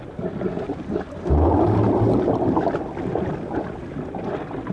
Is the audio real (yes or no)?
yes